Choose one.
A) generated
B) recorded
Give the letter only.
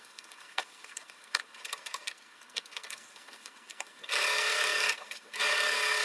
A